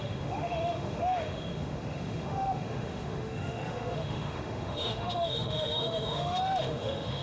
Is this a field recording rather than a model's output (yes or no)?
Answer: no